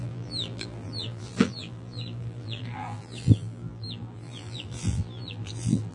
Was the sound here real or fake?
fake